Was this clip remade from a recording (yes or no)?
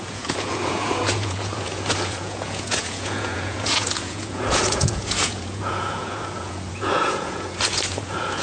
yes